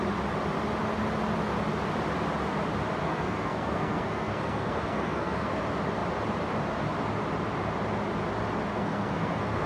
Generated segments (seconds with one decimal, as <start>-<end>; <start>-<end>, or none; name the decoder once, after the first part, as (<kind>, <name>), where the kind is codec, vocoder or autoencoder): 3.0-5.6 (codec, SNAC); 8.7-9.7